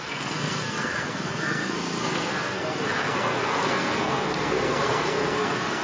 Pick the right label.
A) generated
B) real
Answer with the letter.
A